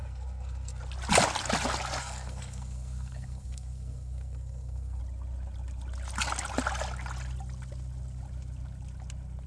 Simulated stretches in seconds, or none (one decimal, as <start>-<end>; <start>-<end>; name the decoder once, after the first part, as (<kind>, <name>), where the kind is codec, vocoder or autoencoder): 0.0-0.8 (codec, SNAC); 2.0-5.0